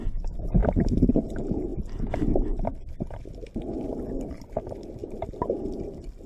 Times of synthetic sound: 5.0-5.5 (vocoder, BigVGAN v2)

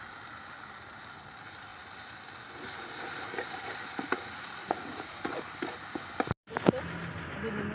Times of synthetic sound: 4.6-5.3 (vocoder, Vocos)

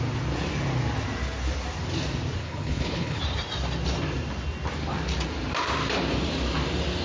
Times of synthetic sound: 2.4-3.2 (codec, HILCodec)

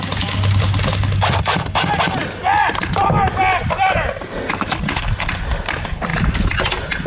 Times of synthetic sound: none

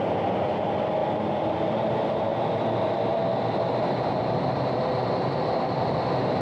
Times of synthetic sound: 1.0-1.6 (vocoder, BigVGAN v2); 2.3-6.4